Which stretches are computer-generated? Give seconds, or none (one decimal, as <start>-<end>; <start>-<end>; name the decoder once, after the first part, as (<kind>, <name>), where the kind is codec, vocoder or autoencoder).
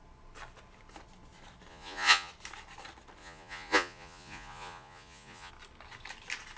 1.7-2.3 (vocoder, Vocos); 3.2-5.5